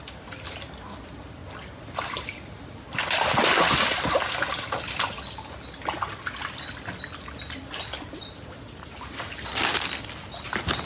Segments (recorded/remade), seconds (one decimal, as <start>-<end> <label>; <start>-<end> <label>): 0.0-10.9 recorded